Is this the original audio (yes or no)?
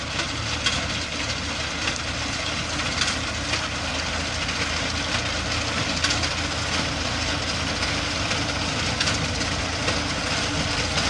yes